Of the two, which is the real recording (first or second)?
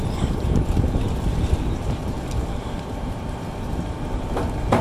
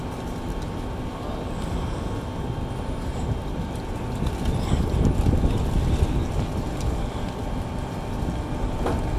second